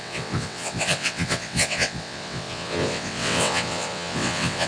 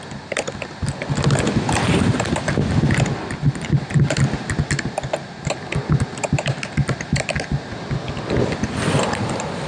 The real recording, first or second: second